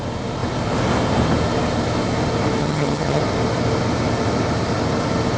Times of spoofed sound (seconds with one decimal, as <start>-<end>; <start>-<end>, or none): 2.6-3.2